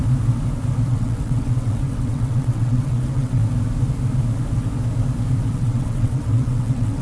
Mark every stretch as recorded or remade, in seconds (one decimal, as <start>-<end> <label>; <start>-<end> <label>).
0.0-0.9 recorded; 0.9-3.4 remade; 3.4-5.5 recorded; 5.5-7.0 remade